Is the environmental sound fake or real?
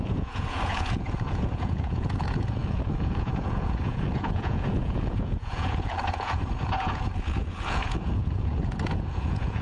fake